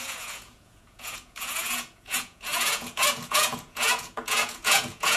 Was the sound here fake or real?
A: fake